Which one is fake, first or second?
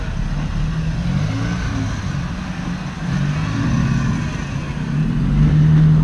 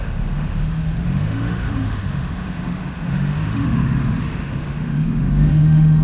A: second